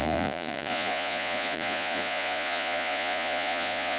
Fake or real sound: fake